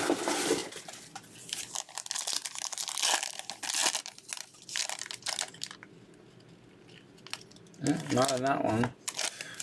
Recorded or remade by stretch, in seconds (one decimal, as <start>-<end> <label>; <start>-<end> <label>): 0.0-9.6 recorded